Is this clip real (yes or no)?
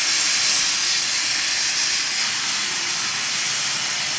yes